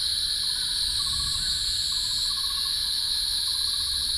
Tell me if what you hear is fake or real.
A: real